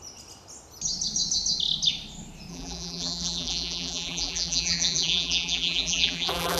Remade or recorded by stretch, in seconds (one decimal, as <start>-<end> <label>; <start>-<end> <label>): 0.0-2.5 recorded; 2.5-6.6 remade